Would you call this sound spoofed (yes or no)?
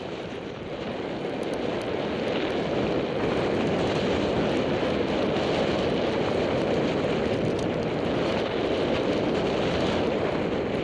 no